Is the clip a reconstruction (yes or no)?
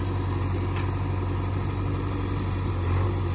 no